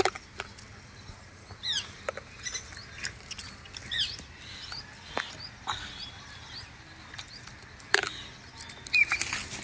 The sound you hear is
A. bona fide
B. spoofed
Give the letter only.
A